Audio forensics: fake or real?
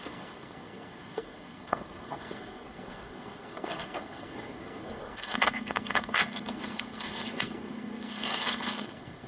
fake